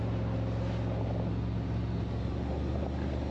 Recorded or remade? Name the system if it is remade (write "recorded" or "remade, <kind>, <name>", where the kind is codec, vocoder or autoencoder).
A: recorded